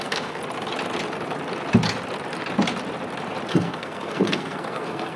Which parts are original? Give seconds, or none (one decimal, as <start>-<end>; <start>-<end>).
0.4-3.5